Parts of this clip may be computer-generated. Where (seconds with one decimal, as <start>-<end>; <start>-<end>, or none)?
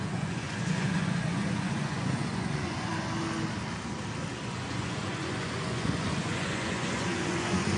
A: 0.0-2.9; 4.4-7.8